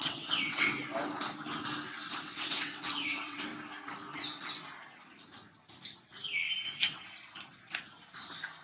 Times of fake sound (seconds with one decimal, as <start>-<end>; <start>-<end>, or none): 0.0-0.7; 2.2-3.5

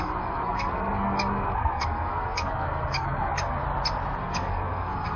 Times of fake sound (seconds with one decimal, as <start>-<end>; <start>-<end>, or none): 0.0-3.6; 4.2-5.2

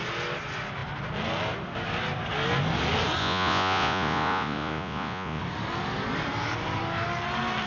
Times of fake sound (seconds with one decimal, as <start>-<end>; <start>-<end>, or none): 3.2-5.4

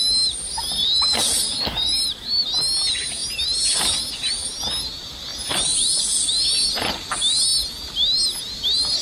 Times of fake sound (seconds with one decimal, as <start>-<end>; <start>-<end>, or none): 1.2-2.4; 3.2-4.0; 5.3-6.0

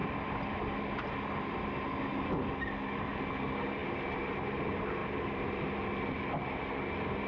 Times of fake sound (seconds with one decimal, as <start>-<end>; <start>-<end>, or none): 3.8-4.3; 5.0-5.6

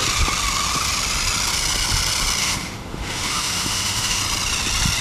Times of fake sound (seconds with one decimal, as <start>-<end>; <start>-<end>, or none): 2.4-4.2

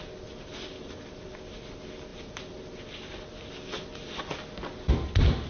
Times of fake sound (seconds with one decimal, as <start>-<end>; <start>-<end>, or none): none

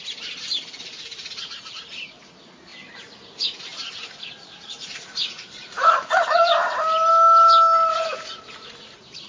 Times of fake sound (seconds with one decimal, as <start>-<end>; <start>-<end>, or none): 1.2-2.7; 4.1-6.4; 7.9-9.3